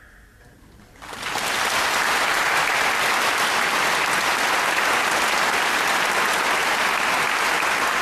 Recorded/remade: recorded